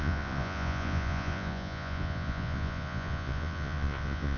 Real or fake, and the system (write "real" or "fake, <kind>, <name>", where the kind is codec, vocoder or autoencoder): fake, vocoder, Vocos